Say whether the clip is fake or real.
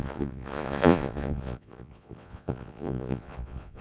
fake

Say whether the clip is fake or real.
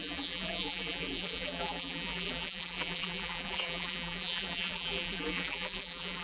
fake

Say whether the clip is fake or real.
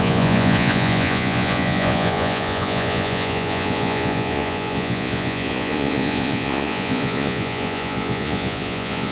fake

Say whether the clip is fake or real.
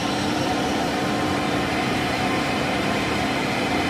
fake